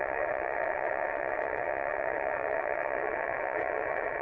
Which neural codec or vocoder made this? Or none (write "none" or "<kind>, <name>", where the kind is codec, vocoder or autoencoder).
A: vocoder, WaveNeXt